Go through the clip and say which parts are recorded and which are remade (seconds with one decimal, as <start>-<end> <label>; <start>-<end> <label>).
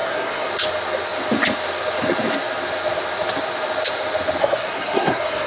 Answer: 0.0-0.5 remade; 0.5-4.4 recorded; 4.4-5.5 remade